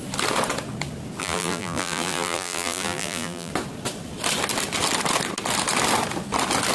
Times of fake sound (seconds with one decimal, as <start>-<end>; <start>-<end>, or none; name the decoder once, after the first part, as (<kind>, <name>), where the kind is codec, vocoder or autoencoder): 1.2-3.5 (vocoder, BigVGAN v2)